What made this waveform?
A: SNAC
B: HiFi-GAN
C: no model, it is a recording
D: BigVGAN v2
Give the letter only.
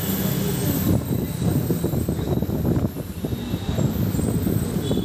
C